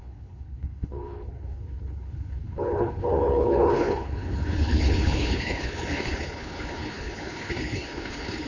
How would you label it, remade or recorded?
remade